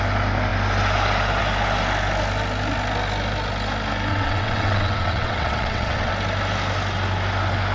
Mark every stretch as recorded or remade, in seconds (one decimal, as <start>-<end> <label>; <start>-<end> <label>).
0.0-4.1 recorded; 4.1-6.1 remade; 6.1-7.7 recorded